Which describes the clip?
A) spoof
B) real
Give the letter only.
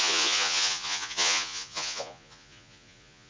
A